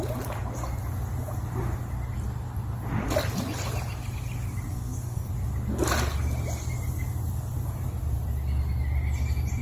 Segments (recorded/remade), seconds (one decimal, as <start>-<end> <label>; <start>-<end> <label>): 0.0-4.7 recorded; 4.7-5.3 remade; 5.3-9.6 recorded